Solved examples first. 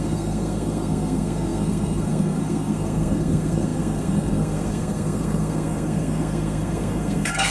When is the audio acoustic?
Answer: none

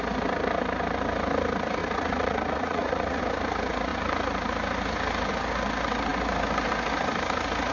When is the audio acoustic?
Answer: 0.0-1.8; 3.2-7.7